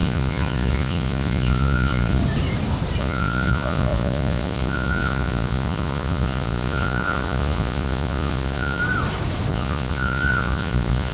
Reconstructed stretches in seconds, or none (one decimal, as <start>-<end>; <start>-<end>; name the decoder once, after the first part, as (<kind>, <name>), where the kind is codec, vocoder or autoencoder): 0.0-2.2 (vocoder, Vocos); 3.0-8.8; 9.5-11.1